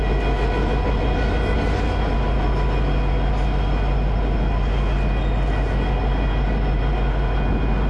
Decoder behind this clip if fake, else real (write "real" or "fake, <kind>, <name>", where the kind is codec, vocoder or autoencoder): real